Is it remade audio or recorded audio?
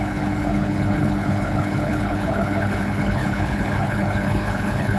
remade